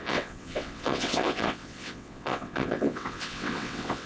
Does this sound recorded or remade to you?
remade